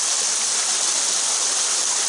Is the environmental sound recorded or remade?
recorded